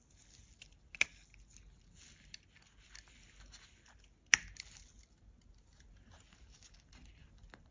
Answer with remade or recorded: recorded